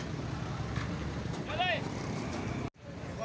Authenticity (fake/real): real